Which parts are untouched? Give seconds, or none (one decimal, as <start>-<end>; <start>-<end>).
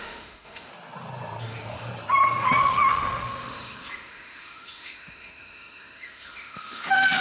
0.7-1.4; 1.9-2.6